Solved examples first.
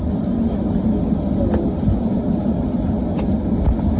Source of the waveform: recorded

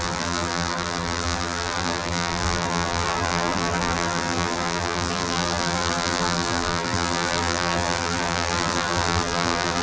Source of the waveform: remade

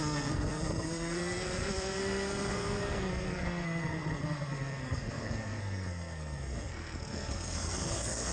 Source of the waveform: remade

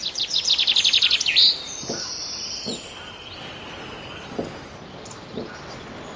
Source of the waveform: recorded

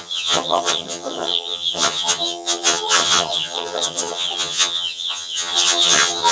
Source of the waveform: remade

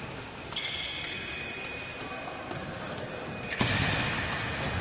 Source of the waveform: recorded